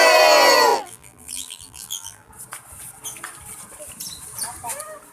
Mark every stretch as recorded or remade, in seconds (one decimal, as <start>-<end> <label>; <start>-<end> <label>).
0.0-0.7 recorded; 0.7-2.3 remade; 2.3-5.1 recorded